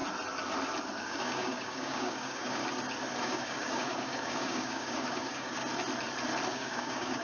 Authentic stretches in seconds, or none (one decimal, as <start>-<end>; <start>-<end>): 0.0-1.0; 2.6-3.2; 5.6-6.5